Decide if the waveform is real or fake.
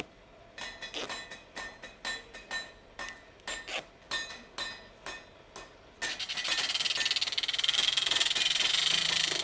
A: real